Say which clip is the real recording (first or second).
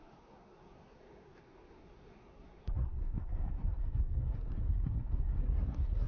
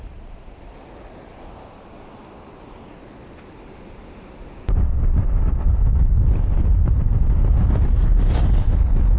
second